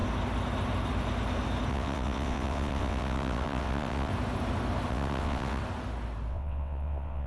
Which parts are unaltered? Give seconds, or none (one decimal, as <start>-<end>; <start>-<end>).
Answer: 0.0-1.7; 4.1-4.9; 5.6-6.3